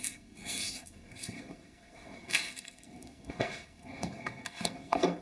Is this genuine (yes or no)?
no